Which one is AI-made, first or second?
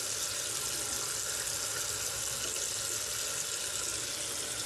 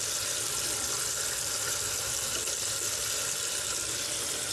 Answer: second